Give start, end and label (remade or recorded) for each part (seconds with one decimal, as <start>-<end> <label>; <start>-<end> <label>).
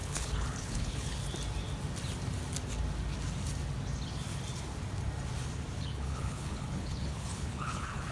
0.0-1.2 remade; 1.2-5.8 recorded; 5.8-8.1 remade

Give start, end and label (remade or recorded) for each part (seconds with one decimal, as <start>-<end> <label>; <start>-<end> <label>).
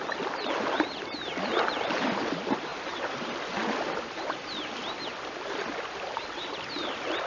0.0-7.3 recorded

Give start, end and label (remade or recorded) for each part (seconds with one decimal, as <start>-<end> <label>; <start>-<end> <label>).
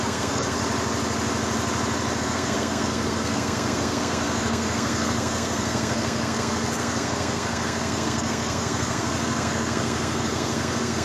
0.0-0.6 remade; 0.6-2.2 recorded; 2.2-11.0 remade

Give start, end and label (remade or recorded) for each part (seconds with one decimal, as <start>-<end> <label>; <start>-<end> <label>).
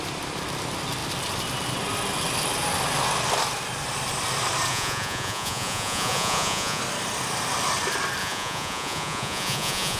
0.0-4.7 recorded; 4.7-6.8 remade; 6.8-8.2 recorded; 8.2-10.0 remade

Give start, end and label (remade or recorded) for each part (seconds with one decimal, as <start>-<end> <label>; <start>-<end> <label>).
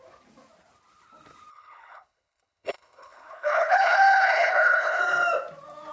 0.0-1.5 recorded; 1.5-5.0 remade; 5.0-5.9 recorded